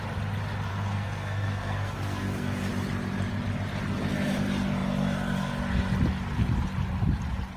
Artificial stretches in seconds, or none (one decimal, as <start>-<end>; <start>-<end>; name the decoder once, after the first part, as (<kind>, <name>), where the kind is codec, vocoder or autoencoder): 0.7-2.7 (codec, SNAC)